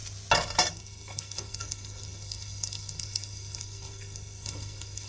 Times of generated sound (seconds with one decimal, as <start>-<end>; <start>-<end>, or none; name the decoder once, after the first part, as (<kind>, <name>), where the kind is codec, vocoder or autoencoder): 0.7-5.1 (codec, SNAC)